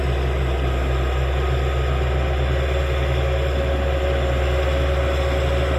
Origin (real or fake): real